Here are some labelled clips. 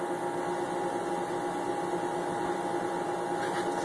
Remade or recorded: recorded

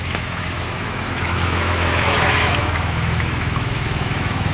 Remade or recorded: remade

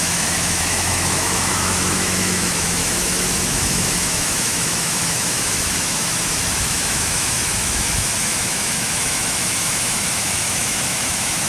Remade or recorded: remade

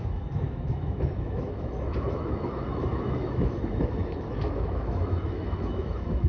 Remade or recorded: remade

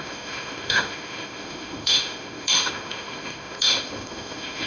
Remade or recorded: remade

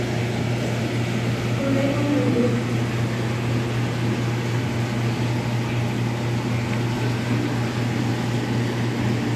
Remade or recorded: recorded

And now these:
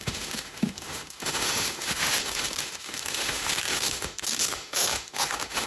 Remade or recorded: remade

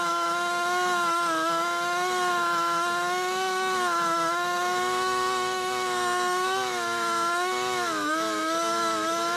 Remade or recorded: remade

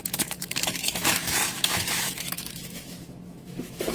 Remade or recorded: remade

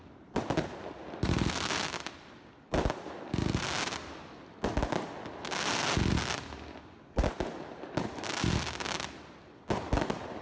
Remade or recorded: recorded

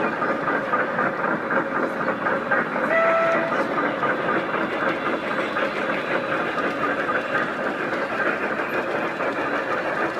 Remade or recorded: recorded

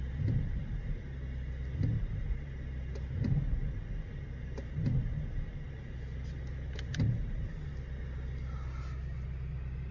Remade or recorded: recorded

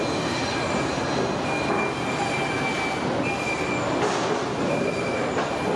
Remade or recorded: recorded